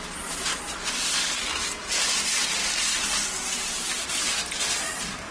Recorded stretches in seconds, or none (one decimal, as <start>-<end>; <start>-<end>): 0.0-5.3